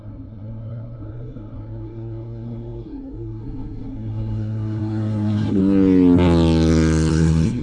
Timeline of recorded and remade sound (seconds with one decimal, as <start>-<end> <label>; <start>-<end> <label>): 0.0-5.6 remade; 5.6-7.1 recorded; 7.1-7.6 remade